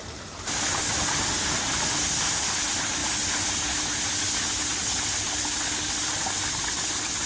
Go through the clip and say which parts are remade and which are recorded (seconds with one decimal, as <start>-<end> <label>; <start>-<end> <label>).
0.0-7.3 recorded